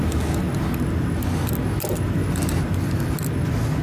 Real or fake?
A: real